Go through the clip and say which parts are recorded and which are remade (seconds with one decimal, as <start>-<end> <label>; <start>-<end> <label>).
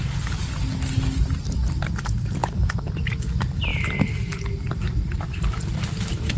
0.0-2.4 recorded; 2.4-2.9 remade; 2.9-6.4 recorded